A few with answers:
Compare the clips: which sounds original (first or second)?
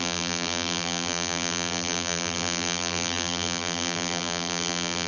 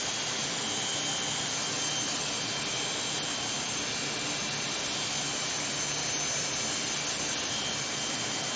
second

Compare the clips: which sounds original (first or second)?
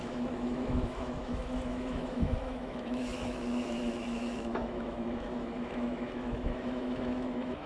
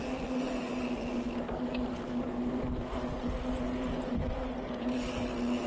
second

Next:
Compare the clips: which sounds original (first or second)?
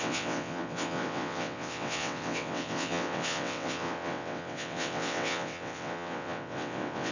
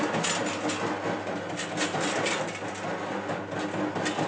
second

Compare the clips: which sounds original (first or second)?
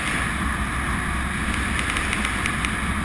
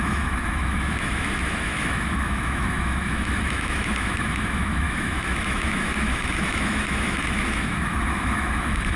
first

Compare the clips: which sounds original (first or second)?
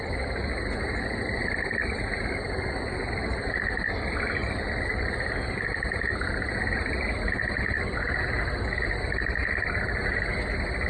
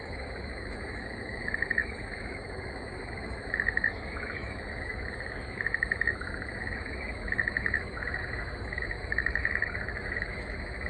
first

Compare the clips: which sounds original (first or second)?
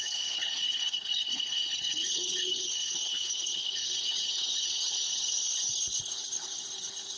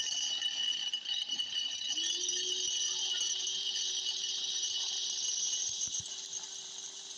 second